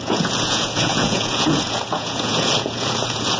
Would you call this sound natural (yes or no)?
no